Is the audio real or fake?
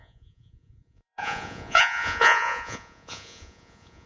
fake